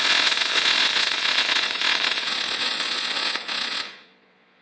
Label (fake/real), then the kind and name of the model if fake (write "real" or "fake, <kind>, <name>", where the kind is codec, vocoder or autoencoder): fake, vocoder, Vocos